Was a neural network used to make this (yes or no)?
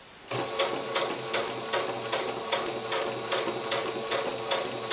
no